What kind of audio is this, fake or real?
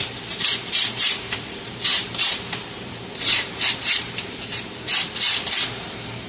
fake